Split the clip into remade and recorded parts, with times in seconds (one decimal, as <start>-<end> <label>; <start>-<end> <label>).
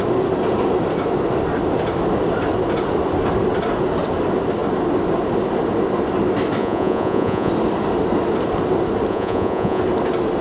0.0-6.6 recorded; 6.6-7.5 remade; 7.5-9.1 recorded; 9.1-9.8 remade; 9.8-10.4 recorded